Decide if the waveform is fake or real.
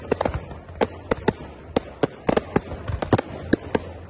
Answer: fake